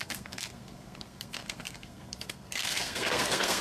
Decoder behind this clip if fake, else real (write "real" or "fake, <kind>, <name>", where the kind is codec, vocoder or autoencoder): fake, codec, SNAC